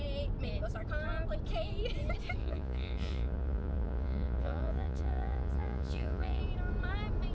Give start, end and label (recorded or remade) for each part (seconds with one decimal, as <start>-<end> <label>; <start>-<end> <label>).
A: 0.0-2.4 recorded; 2.4-6.4 remade; 6.4-7.3 recorded